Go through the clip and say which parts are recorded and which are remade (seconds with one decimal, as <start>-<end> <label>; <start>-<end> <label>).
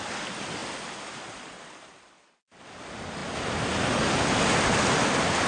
0.0-5.5 recorded